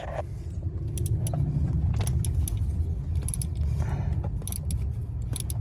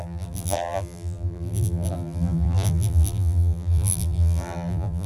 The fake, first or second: second